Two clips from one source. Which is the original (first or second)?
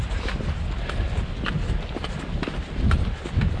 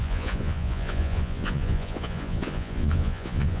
first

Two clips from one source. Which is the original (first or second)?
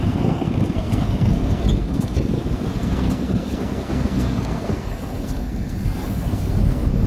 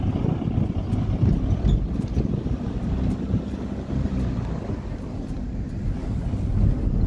second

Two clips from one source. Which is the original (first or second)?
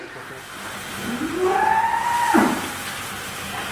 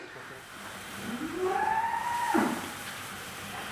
first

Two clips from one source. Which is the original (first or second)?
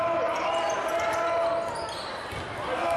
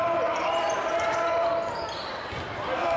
first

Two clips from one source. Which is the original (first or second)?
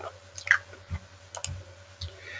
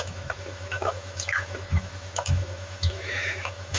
first